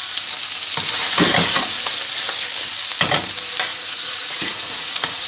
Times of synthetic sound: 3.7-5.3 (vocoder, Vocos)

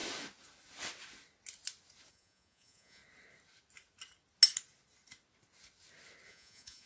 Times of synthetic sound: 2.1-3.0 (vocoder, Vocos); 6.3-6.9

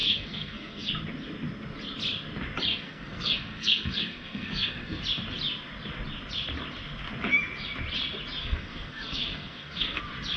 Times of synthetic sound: 0.0-0.9 (codec, SNAC); 2.7-5.0; 8.4-10.0

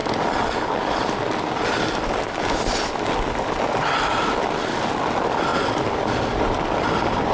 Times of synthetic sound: none

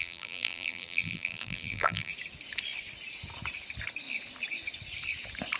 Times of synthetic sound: 0.0-2.1 (vocoder, BigVGAN v2)